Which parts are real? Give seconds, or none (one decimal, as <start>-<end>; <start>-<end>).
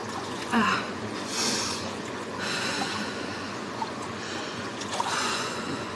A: none